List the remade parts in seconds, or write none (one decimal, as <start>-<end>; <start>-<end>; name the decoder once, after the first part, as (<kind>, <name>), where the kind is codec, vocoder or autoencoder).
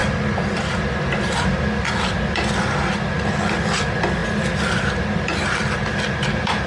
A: none